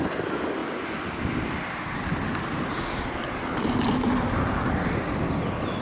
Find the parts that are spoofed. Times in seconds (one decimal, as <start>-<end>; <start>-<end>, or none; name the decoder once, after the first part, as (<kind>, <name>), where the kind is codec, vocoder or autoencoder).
0.6-1.5 (vocoder, BigVGAN v2); 2.1-5.8